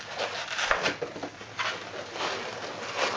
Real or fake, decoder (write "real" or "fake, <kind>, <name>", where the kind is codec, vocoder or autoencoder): real